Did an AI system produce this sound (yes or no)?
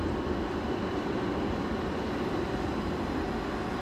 no